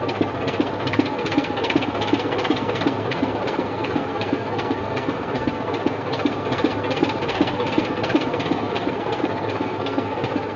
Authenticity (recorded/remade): remade